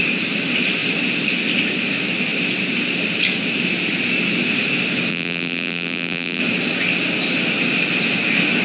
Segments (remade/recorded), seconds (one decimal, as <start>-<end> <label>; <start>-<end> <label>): 0.0-5.1 recorded; 5.1-6.4 remade; 6.4-8.6 recorded